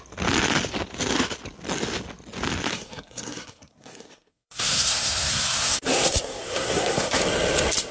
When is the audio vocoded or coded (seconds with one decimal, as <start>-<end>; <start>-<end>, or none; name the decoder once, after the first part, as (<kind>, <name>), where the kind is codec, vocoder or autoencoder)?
2.7-7.2 (codec, SNAC)